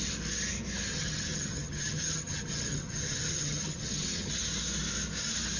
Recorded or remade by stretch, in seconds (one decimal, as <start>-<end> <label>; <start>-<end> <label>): 0.0-0.9 recorded; 0.9-4.3 remade; 4.3-5.6 recorded